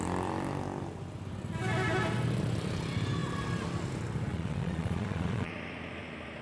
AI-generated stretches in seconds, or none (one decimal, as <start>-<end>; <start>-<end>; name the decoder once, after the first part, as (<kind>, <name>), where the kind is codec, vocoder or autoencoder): 4.3-5.5 (vocoder, Vocos)

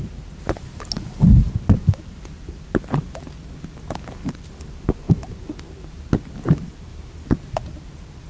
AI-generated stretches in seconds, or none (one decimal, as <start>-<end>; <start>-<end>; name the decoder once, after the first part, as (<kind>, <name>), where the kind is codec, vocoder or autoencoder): 4.2-5.9 (vocoder, BigVGAN v2)

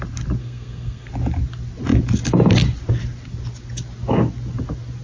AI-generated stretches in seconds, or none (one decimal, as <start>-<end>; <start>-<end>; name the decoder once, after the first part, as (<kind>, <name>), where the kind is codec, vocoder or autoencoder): 0.4-1.1 (codec, SNAC)

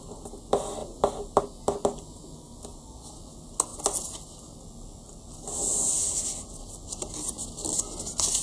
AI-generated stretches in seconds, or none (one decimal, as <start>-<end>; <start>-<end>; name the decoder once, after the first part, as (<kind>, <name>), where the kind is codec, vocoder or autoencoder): none

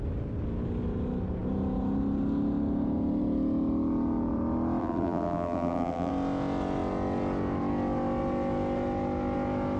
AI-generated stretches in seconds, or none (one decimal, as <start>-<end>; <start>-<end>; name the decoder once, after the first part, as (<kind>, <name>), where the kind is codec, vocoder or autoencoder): 4.8-6.1 (vocoder, BigVGAN v2)